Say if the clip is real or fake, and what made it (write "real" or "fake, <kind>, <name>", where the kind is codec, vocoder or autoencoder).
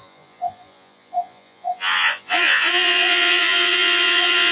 fake, vocoder, Vocos